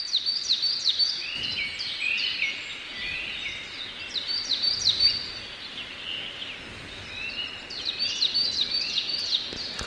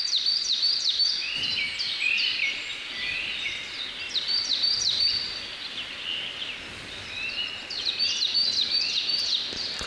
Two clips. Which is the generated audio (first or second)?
second